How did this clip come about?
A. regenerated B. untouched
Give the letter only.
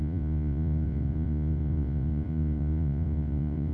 A